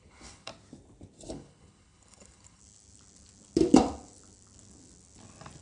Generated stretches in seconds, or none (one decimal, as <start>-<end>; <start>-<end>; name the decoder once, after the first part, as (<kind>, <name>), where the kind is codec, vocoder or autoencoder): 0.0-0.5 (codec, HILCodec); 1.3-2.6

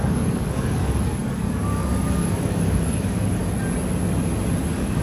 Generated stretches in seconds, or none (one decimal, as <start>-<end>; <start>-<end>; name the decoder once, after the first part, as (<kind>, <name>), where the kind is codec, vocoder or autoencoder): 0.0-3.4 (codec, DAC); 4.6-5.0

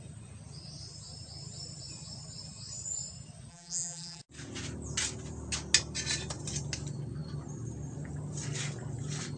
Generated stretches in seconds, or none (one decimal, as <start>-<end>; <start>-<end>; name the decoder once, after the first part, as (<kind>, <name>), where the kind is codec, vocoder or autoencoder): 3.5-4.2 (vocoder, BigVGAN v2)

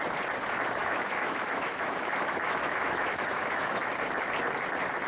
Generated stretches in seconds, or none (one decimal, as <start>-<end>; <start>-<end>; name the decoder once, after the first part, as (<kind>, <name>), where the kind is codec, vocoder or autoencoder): 0.8-3.9 (autoencoder, DAC-VAE)